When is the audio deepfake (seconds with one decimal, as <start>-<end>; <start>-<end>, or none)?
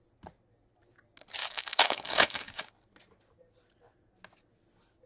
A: 1.4-2.7